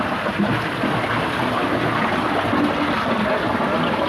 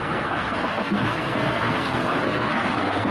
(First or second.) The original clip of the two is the first